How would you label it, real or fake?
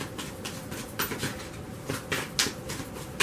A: real